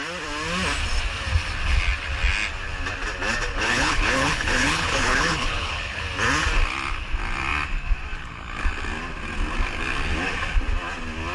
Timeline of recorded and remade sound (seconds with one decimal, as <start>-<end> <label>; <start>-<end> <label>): 0.0-3.5 recorded; 3.5-6.0 remade; 6.0-11.3 recorded